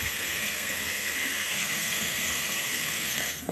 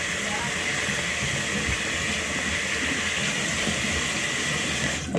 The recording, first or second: second